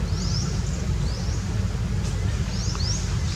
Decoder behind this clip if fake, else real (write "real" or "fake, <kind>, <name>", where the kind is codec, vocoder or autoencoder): real